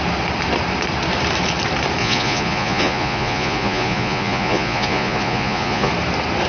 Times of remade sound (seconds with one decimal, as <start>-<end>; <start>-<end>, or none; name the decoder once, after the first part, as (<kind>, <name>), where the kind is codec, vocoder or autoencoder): 2.0-5.9 (vocoder, Vocos)